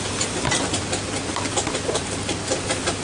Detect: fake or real real